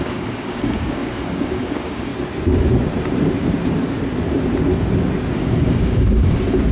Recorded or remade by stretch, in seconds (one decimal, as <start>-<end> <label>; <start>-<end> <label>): 0.0-2.1 remade; 2.1-5.3 recorded; 5.3-6.7 remade